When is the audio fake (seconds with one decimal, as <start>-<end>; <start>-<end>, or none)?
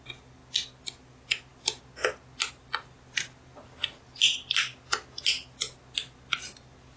none